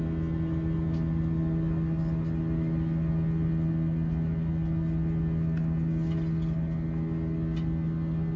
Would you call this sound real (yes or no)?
yes